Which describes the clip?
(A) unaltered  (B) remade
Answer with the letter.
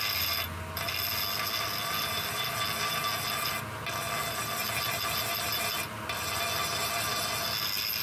A